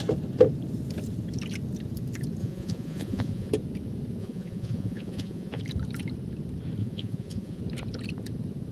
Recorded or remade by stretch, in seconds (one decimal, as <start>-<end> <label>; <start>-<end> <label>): 0.0-2.4 recorded; 2.4-3.5 remade; 3.5-4.2 recorded; 4.2-5.6 remade; 5.6-6.8 recorded; 6.8-7.6 remade; 7.6-8.7 recorded